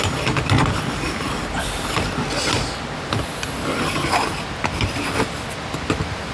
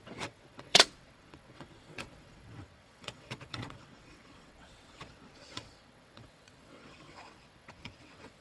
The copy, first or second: second